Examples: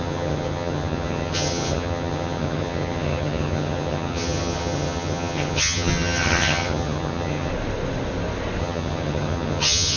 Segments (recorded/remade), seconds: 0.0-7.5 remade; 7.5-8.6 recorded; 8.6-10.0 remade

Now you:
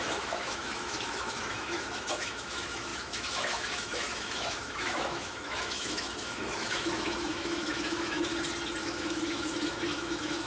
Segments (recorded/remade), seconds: 0.0-8.3 remade; 8.3-8.8 recorded; 8.8-10.5 remade

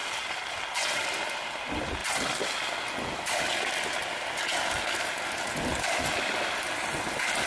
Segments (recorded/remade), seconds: 0.0-7.5 recorded

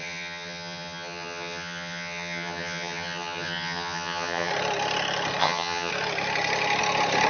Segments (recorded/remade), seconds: 0.0-4.5 remade; 4.5-5.4 recorded; 5.4-5.9 remade; 5.9-7.3 recorded

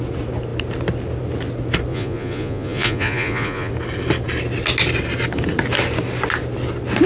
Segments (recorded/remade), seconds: 0.0-1.9 recorded; 1.9-3.7 remade; 3.7-7.1 recorded